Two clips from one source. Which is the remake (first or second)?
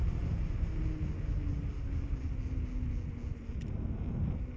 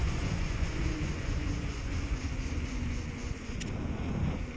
second